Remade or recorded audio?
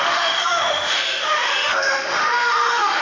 remade